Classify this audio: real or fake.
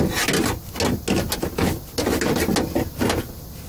real